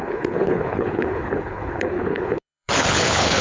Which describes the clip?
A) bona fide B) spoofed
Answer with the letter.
B